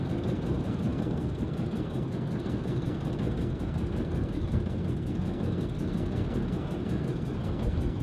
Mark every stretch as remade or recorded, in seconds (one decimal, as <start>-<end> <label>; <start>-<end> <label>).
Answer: 0.0-8.0 remade